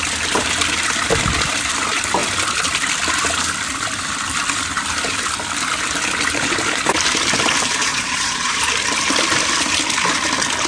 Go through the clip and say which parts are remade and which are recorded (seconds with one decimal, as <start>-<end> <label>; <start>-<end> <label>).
0.0-7.8 recorded; 7.8-8.6 remade; 8.6-10.7 recorded